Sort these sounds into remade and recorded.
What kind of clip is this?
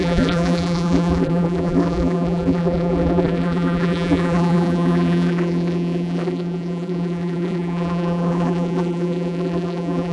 remade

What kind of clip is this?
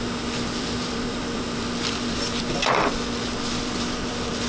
remade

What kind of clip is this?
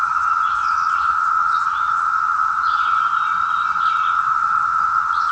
remade